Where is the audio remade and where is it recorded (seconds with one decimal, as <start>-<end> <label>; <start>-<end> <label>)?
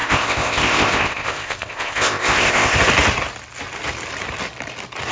0.0-2.8 remade; 2.8-5.1 recorded